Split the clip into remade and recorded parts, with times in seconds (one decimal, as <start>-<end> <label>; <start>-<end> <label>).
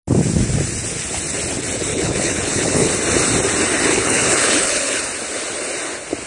0.0-1.9 recorded; 1.9-2.9 remade; 2.9-3.9 recorded; 3.9-5.0 remade; 5.0-6.3 recorded